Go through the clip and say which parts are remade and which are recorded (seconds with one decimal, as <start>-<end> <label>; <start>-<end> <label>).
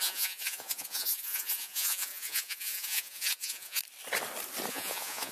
0.0-3.8 remade; 3.8-4.7 recorded; 4.7-5.3 remade